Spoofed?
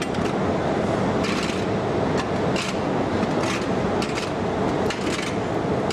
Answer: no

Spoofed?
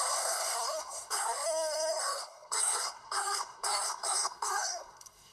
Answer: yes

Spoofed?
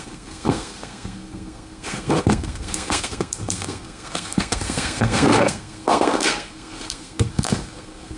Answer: yes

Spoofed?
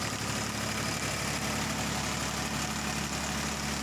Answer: no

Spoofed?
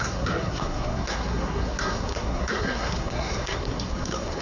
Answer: yes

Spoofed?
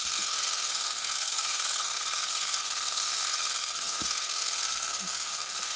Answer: yes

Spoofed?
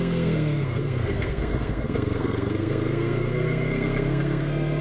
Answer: yes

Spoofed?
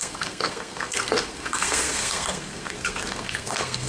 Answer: yes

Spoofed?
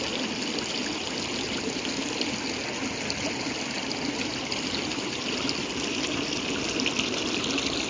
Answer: no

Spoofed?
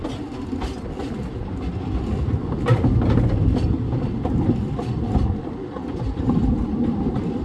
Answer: no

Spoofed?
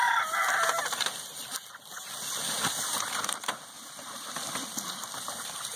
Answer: no